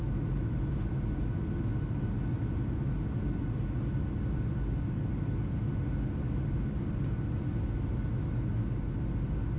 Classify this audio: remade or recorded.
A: recorded